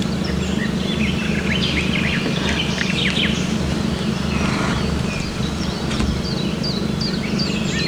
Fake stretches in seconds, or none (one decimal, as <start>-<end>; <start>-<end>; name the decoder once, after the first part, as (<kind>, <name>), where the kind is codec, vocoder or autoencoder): none